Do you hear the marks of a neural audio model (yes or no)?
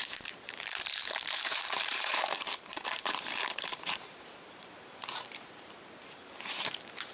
yes